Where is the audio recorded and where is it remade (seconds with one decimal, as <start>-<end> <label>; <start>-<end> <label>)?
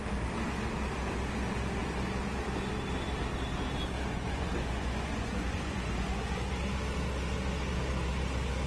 0.0-4.1 recorded; 4.1-6.5 remade; 6.5-8.7 recorded